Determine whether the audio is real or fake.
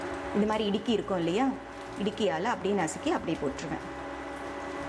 real